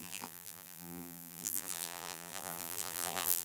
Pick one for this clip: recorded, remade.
remade